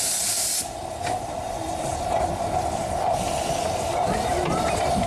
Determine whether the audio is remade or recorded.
remade